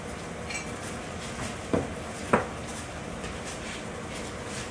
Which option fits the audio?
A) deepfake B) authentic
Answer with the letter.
B